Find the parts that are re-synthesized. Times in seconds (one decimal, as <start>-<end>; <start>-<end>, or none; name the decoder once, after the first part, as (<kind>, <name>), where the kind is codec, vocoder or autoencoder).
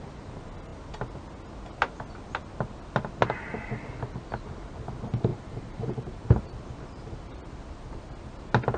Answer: 5.3-7.4 (vocoder, BigVGAN v2)